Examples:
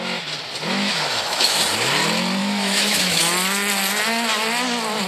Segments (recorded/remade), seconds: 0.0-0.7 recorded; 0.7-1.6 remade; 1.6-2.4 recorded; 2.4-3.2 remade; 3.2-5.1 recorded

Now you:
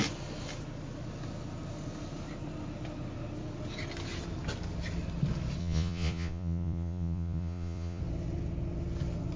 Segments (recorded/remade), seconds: 0.0-5.6 recorded; 5.6-8.0 remade; 8.0-9.4 recorded

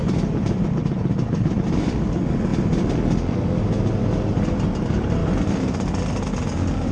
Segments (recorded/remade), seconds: 0.0-6.9 recorded

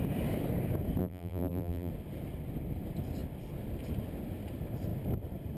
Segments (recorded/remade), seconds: 0.0-1.0 recorded; 1.0-1.9 remade; 1.9-5.6 recorded